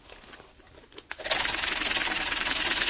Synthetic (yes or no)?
no